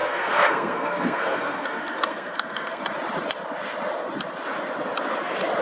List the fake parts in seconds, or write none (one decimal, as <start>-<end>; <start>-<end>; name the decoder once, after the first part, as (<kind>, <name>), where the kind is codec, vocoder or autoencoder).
0.0-2.8 (codec, SNAC)

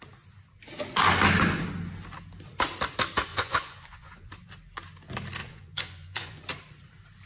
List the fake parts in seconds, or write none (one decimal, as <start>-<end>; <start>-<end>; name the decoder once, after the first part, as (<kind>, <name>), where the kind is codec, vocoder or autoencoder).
3.3-4.3 (vocoder, Vocos); 5.4-6.4